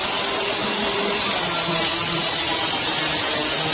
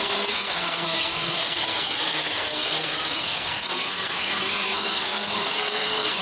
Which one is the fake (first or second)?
second